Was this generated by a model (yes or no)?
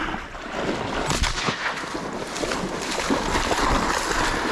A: no